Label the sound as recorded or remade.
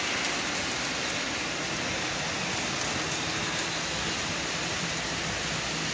recorded